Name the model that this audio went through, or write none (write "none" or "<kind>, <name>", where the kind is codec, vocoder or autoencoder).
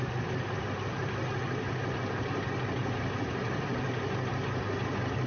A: none